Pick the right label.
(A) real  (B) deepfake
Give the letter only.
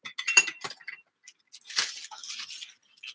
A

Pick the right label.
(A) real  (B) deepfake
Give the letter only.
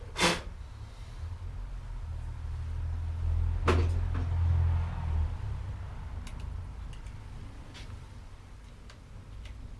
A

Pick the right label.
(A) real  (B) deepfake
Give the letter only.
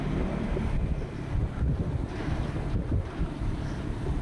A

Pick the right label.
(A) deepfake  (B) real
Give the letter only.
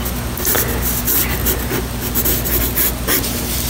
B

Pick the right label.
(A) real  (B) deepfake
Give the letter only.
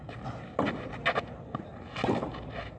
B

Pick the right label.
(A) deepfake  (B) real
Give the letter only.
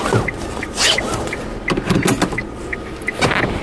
B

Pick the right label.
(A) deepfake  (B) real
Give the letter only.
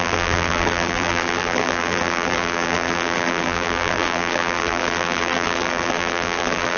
A